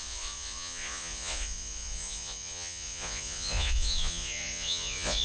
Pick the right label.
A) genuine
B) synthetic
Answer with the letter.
B